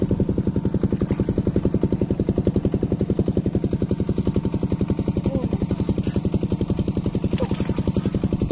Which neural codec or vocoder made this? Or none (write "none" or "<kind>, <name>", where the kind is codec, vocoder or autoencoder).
none